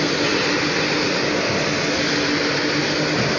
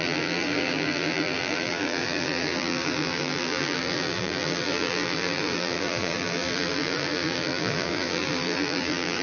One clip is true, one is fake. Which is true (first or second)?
first